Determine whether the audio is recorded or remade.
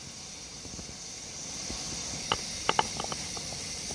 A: recorded